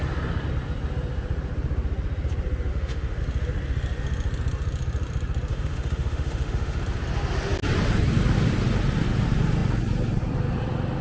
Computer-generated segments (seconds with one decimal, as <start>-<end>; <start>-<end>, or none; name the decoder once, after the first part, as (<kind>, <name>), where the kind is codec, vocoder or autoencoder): 2.7-3.2 (autoencoder, DAC-VAE); 5.5-6.8